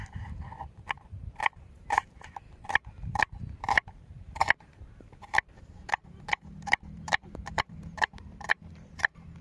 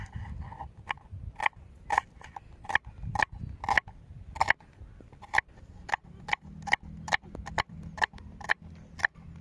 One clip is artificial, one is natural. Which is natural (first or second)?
second